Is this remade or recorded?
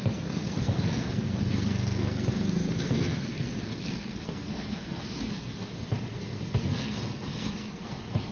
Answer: remade